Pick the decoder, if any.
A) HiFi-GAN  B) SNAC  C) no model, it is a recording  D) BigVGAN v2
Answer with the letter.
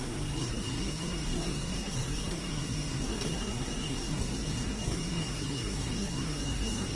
B